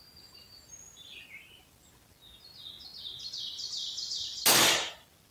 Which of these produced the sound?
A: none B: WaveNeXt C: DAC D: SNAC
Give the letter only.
A